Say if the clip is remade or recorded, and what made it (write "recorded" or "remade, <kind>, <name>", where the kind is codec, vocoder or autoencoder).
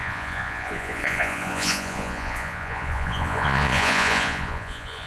remade, vocoder, Vocos